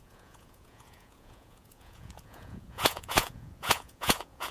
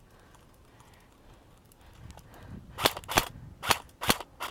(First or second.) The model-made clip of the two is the first